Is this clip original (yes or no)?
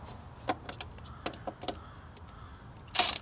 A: yes